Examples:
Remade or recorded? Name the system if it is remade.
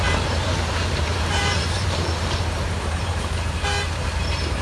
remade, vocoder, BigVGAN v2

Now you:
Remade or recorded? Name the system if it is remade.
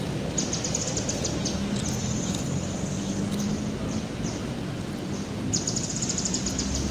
recorded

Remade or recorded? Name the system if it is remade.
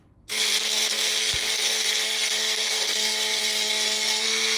remade, codec, SNAC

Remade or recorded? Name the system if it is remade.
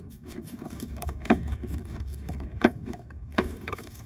remade, codec, DAC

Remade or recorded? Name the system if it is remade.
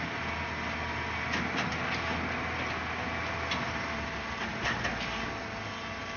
recorded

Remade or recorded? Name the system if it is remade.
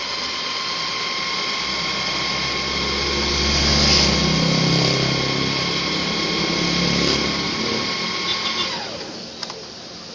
recorded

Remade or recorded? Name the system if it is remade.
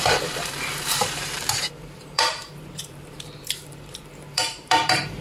remade, vocoder, BigVGAN v2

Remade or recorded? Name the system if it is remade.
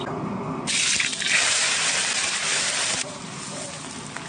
recorded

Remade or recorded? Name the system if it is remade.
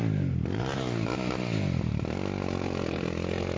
remade, vocoder, BigVGAN v2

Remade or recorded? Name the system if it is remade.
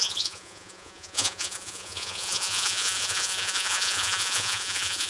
remade, vocoder, Vocos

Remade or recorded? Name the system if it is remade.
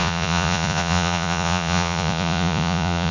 remade, vocoder, Vocos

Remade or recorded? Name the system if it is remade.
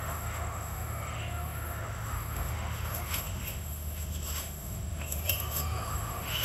remade, autoencoder, DAC-VAE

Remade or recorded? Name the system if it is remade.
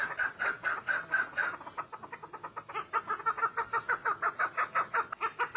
recorded